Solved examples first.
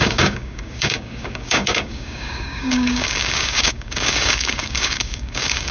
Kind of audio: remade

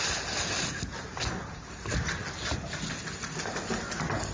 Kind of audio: recorded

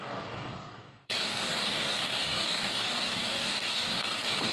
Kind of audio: remade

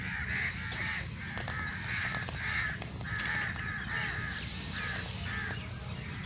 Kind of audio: recorded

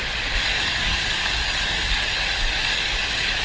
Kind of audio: remade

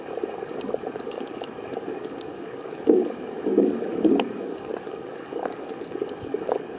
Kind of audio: remade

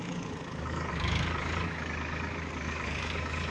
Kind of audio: remade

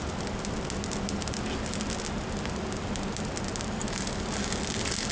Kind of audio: recorded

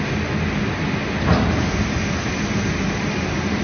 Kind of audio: recorded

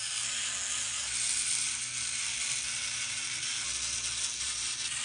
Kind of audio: recorded